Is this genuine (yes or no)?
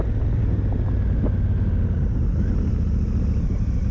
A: yes